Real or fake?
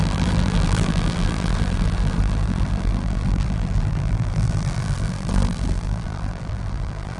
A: fake